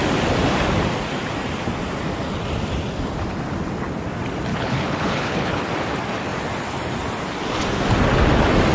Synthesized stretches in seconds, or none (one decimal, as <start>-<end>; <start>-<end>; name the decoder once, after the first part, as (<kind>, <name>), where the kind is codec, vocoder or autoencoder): 4.5-5.6 (codec, HILCodec)